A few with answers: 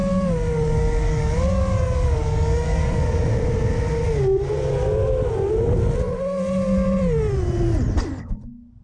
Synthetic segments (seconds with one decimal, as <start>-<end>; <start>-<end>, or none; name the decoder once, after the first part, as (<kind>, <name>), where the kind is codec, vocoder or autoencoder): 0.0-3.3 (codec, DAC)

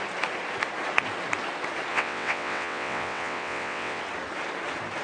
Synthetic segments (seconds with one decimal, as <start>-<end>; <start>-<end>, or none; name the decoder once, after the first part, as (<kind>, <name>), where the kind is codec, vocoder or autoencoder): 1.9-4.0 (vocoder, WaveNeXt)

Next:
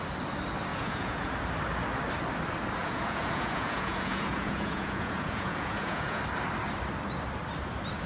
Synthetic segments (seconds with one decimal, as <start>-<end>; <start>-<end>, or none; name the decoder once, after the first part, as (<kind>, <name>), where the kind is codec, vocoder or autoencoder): 0.7-1.3 (vocoder, Vocos); 2.8-6.2